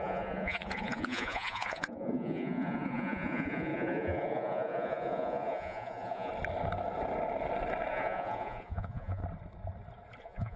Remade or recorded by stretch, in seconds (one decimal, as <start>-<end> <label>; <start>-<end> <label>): 0.0-6.3 remade; 6.3-7.9 recorded; 7.9-9.2 remade; 9.2-10.2 recorded; 10.2-10.6 remade